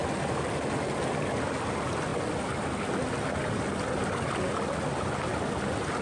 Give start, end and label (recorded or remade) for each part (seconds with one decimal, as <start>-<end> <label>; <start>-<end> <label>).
0.0-6.0 recorded